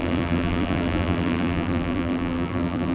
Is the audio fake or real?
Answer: fake